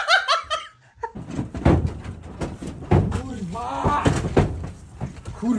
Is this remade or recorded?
recorded